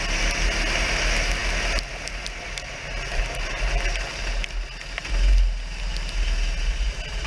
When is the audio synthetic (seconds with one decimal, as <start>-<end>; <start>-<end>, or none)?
none